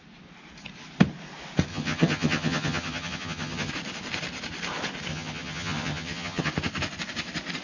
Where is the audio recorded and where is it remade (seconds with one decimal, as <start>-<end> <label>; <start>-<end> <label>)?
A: 0.0-1.7 recorded; 1.7-3.7 remade; 3.7-5.1 recorded; 5.1-6.5 remade; 6.5-7.6 recorded